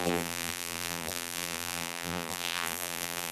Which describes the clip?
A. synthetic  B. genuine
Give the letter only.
A